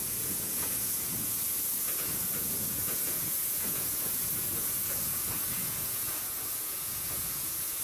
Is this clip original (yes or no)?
no